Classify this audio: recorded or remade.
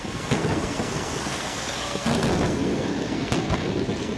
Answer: remade